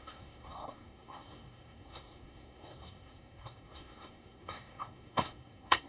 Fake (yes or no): yes